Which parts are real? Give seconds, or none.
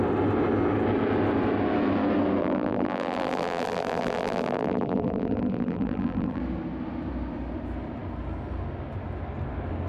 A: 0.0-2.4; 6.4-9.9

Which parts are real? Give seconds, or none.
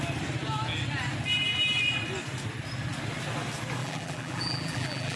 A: 0.0-3.8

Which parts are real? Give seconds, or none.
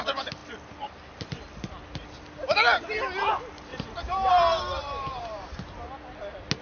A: 0.0-3.7; 4.3-4.7; 5.5-6.6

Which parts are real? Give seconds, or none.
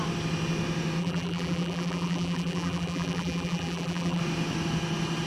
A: 0.0-1.0; 4.2-5.3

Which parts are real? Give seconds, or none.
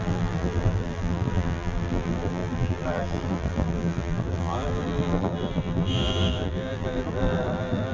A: none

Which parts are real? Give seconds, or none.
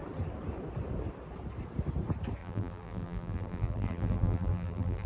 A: 0.0-2.4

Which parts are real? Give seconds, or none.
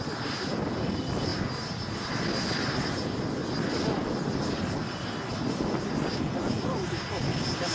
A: 0.0-7.7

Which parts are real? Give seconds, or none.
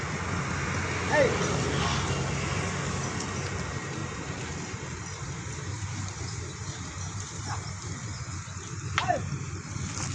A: 0.0-4.0; 7.8-10.1